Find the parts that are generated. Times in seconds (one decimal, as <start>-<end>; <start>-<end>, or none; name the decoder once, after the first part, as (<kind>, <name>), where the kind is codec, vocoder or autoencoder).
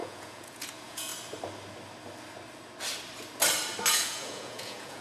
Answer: 0.0-1.1 (vocoder, Vocos); 3.9-5.0